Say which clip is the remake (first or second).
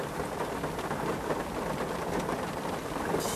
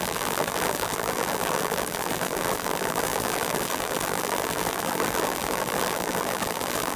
second